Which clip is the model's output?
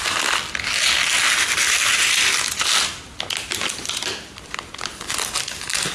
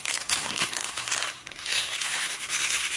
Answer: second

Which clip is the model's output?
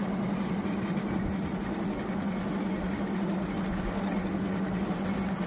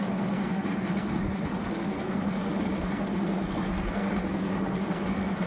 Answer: second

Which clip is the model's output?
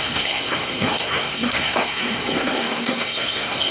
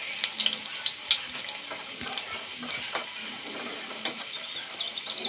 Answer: first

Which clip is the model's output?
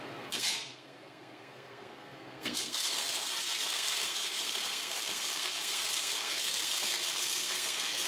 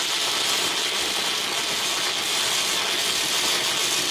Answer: first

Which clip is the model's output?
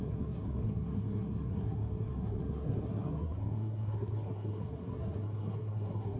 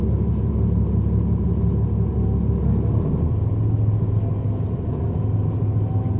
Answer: first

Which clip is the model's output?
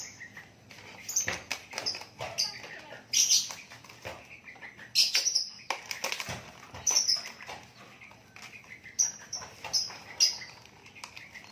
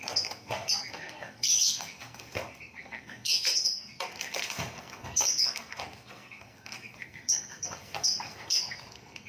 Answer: second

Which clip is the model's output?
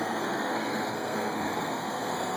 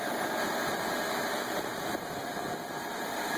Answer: first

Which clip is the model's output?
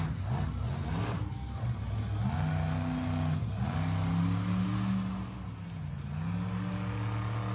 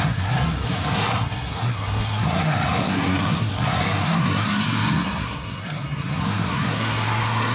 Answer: second